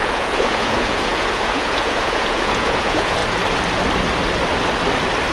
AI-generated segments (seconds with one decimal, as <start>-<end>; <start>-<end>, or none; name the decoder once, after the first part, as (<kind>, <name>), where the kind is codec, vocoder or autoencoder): 0.0-3.2 (vocoder, Vocos)

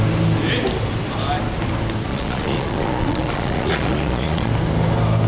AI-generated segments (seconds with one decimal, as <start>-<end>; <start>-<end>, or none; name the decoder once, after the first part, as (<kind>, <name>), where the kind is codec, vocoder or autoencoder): 2.1-4.5 (vocoder, Vocos)